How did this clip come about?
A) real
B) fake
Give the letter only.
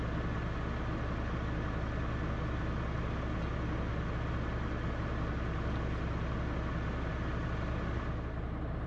A